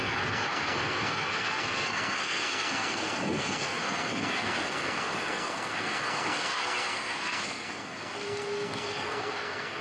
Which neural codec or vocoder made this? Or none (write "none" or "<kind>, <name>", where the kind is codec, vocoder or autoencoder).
codec, SNAC